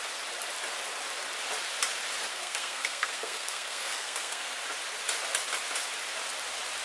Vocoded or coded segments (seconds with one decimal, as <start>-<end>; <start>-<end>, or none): 2.3-4.6